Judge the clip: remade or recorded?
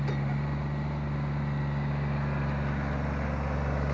recorded